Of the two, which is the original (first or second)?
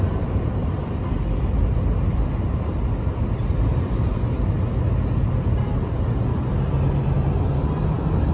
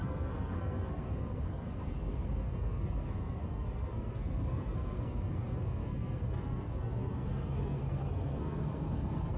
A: first